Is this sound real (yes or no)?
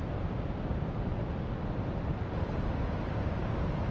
yes